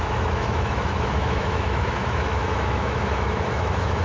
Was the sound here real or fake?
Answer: fake